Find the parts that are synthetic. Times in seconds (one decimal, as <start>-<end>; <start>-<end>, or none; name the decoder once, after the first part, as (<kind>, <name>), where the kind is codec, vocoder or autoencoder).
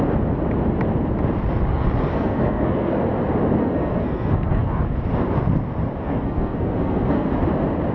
2.1-3.0 (codec, SNAC); 3.6-4.7; 6.0-7.3